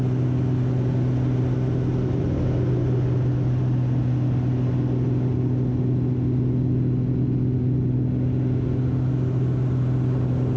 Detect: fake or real real